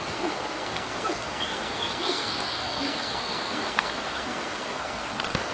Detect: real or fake fake